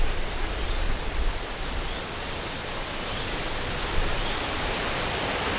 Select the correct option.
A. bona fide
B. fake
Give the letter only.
A